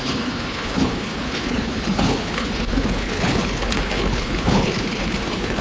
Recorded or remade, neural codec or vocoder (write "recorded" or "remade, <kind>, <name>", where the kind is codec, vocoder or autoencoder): remade, codec, HILCodec